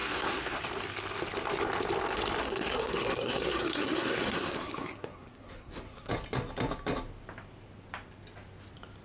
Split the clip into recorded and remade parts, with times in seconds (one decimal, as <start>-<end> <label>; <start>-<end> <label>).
0.0-0.6 remade; 0.6-2.4 recorded; 2.4-6.1 remade; 6.1-9.0 recorded